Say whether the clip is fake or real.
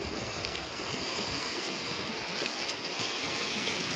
fake